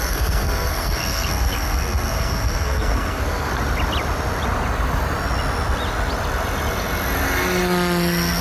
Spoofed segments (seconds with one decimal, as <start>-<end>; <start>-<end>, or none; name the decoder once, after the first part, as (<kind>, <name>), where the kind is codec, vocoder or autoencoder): 0.0-3.5 (codec, SNAC)